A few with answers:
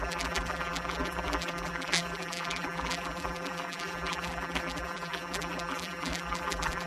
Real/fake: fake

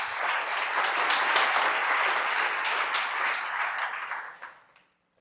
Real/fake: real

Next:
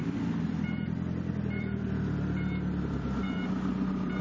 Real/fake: fake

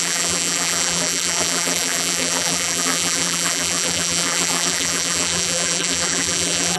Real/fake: fake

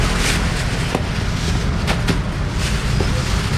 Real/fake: real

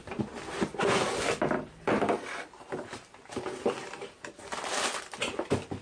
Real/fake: real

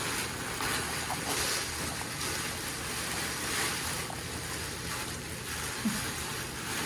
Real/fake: real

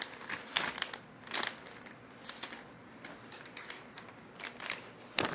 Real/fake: fake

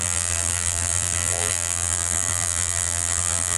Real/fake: fake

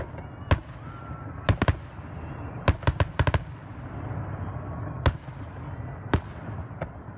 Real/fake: real